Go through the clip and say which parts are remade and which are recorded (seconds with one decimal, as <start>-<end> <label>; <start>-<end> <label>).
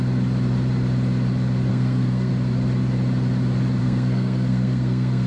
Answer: 0.0-1.7 recorded; 1.7-2.3 remade; 2.3-3.8 recorded; 3.8-5.3 remade